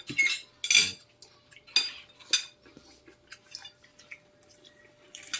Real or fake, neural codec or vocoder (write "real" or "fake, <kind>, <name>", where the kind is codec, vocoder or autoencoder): real